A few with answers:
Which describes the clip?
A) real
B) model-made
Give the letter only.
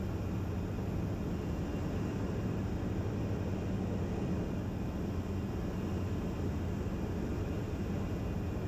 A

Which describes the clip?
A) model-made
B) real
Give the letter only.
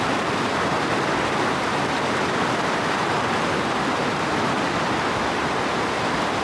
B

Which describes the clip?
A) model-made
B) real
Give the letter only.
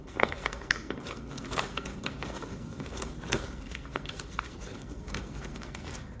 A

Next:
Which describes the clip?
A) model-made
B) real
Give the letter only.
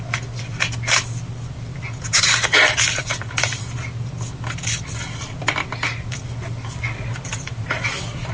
B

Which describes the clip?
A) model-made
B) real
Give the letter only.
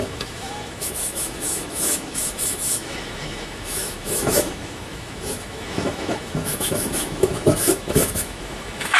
A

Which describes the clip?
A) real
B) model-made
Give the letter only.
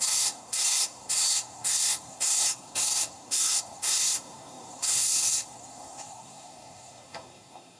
B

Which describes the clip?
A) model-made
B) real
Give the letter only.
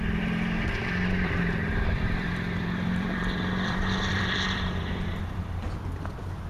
A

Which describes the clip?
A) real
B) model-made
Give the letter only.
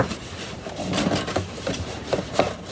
B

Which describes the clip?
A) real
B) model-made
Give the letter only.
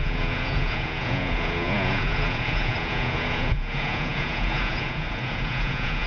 B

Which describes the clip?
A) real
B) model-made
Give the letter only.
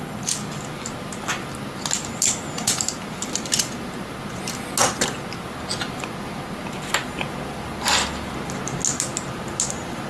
A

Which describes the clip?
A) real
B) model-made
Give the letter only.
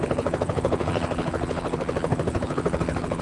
B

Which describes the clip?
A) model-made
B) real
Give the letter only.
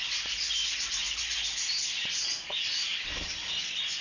B